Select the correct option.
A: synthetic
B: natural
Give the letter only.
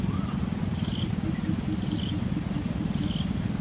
A